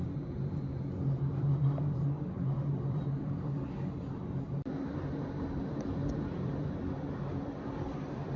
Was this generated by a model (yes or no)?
yes